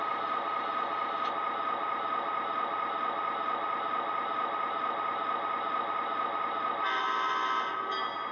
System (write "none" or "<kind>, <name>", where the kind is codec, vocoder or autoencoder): none